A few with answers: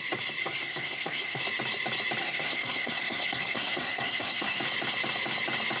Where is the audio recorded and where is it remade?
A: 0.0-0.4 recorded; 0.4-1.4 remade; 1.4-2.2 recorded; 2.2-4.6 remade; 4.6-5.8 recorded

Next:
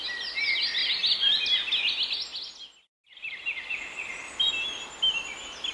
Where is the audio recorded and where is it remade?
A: 0.0-5.7 recorded